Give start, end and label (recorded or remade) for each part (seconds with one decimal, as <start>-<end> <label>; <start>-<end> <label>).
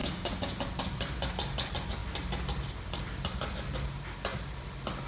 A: 0.0-0.6 remade; 0.6-5.1 recorded